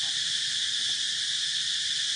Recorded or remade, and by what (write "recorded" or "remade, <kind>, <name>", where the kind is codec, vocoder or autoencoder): recorded